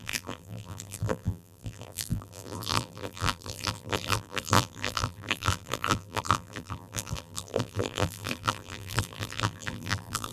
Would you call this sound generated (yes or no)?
yes